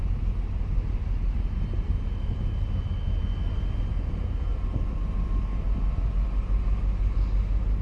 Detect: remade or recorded recorded